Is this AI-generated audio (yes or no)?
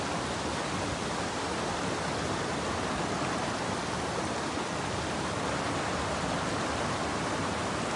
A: no